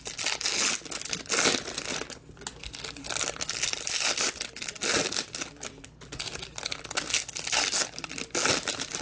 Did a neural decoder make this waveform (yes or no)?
no